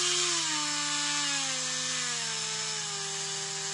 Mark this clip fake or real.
real